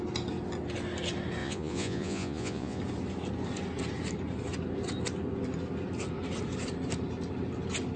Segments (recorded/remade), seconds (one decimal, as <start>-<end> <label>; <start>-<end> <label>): 0.0-1.4 recorded; 1.4-2.8 remade; 2.8-8.0 recorded